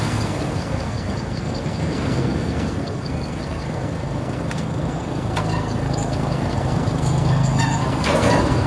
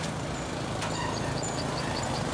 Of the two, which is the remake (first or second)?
first